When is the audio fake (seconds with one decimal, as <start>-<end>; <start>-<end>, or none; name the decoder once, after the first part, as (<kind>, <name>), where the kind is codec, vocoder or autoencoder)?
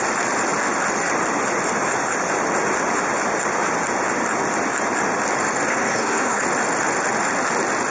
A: 5.7-6.4 (codec, SNAC)